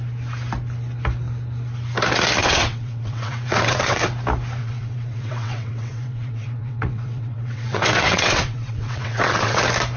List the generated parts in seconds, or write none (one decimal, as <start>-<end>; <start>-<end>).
2.4-4.1; 4.6-9.6